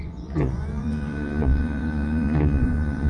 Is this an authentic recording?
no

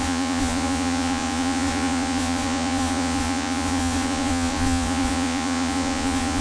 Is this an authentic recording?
no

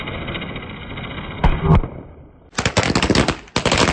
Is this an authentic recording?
yes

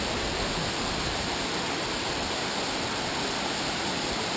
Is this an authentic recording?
yes